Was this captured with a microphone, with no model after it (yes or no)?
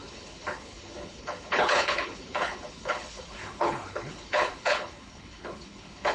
no